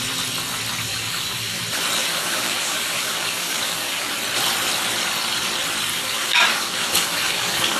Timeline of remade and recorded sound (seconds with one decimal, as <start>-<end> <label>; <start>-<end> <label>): 0.0-0.9 recorded; 0.9-1.6 remade; 1.6-2.0 recorded; 2.0-4.1 remade; 4.1-5.9 recorded; 5.9-7.8 remade

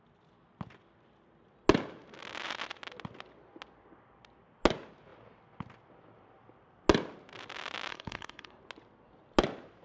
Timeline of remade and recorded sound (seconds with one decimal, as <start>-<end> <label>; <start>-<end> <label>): 0.0-7.9 recorded; 7.9-8.6 remade; 8.6-9.8 recorded

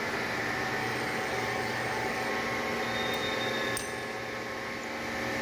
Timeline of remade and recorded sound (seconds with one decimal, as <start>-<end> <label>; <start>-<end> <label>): 0.0-0.8 recorded; 0.8-2.3 remade; 2.3-5.4 recorded

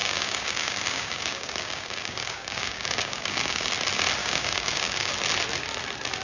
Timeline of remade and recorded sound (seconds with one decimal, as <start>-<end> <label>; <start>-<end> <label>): 0.0-3.7 remade; 3.7-4.2 recorded; 4.2-5.1 remade; 5.1-6.2 recorded